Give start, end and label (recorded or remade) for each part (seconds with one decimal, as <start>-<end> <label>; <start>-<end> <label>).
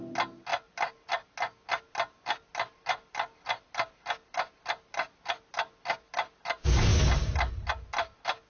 0.0-8.5 recorded